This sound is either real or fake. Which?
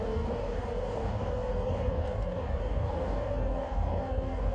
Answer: fake